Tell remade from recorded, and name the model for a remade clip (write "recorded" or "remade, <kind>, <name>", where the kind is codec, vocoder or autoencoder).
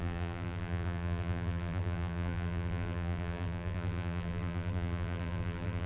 remade, vocoder, BigVGAN v2